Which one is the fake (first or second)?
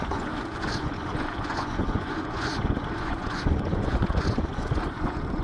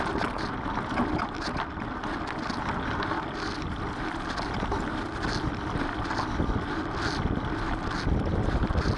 first